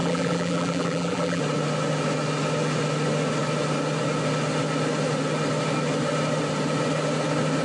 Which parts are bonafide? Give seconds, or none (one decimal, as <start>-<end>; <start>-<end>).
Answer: 1.4-7.6